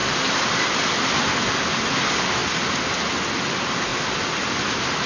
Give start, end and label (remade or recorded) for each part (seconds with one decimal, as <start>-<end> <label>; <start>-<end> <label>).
0.0-5.1 recorded